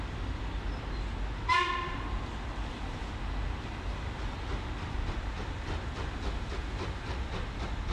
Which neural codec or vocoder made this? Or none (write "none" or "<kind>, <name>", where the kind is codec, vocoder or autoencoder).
none